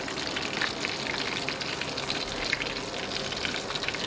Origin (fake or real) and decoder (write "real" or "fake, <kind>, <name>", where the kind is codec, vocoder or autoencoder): real